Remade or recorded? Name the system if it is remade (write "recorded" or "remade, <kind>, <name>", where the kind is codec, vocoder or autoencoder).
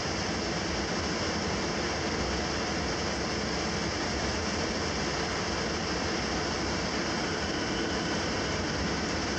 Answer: recorded